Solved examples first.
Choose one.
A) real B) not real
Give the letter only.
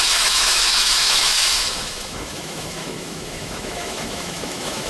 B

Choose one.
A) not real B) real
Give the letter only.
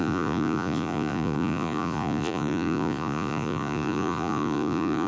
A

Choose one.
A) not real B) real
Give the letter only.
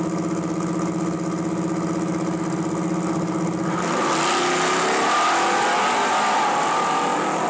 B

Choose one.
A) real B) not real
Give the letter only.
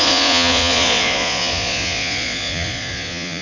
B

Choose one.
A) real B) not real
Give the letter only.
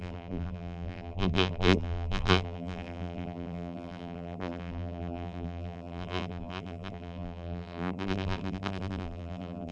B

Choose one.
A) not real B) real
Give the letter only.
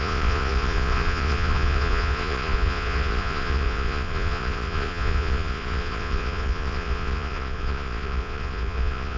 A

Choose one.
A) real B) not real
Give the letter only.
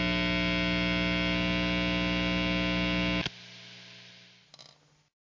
A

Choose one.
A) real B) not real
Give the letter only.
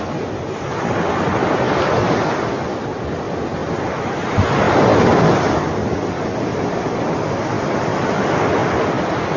A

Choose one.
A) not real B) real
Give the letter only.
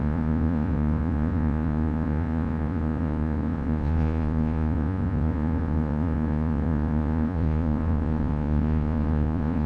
A